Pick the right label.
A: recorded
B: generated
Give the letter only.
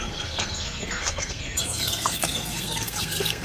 B